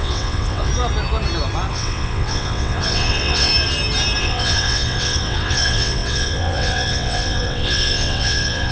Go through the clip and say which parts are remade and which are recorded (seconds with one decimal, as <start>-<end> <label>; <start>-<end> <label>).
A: 0.0-0.7 remade; 0.7-1.7 recorded; 1.7-3.5 remade; 3.5-4.2 recorded; 4.2-8.7 remade